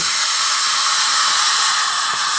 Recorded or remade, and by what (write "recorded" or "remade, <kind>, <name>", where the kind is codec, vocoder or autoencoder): remade, vocoder, Vocos